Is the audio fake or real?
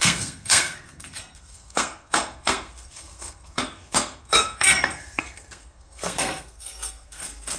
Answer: fake